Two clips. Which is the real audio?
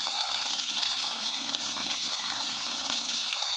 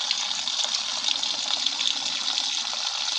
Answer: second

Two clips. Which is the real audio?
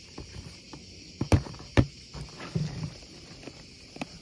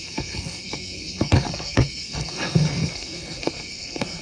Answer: first